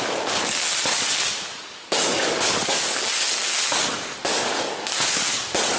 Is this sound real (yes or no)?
no